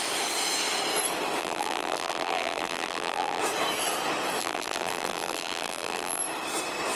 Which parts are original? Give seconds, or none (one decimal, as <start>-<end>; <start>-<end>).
0.0-1.4; 3.4-4.4; 6.2-7.0